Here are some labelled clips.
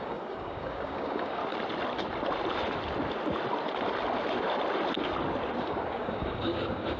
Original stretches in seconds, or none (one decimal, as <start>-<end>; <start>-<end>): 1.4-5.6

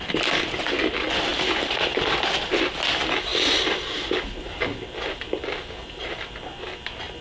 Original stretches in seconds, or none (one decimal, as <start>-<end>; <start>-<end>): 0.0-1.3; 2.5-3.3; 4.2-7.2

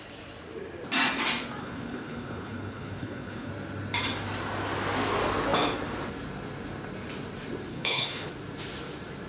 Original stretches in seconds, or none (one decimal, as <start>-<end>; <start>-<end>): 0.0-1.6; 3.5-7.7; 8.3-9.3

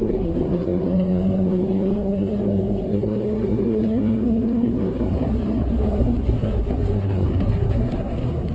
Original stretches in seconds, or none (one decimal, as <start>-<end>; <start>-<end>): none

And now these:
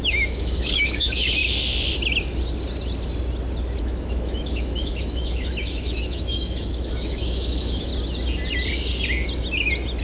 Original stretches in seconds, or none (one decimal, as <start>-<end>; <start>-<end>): 1.4-3.8; 7.9-10.0